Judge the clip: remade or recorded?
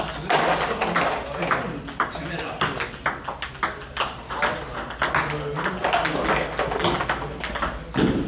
recorded